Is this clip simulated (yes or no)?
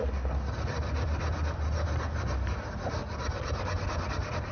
no